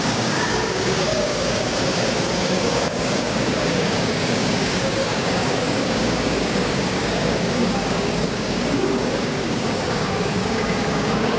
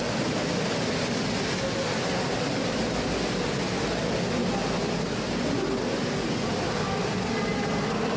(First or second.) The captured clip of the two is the second